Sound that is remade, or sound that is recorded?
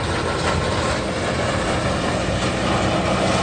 recorded